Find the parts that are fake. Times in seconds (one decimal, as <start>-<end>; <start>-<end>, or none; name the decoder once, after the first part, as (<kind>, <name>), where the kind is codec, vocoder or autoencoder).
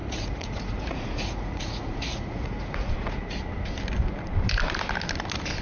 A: 0.0-3.4 (vocoder, Vocos)